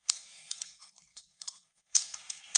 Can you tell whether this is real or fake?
fake